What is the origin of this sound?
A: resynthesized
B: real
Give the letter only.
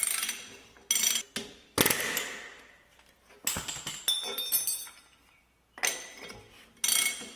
B